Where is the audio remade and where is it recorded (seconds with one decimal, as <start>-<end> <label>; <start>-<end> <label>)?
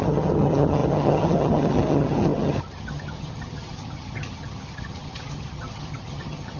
0.0-6.6 remade